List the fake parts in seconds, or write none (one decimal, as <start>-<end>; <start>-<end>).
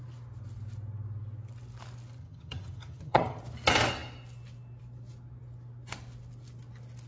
2.2-3.4